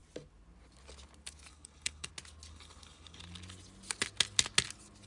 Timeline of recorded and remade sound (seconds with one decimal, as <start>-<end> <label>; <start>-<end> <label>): 0.0-1.5 recorded; 1.5-2.1 remade; 2.1-2.5 recorded; 2.5-3.2 remade; 3.2-5.1 recorded